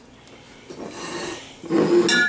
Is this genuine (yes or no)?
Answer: yes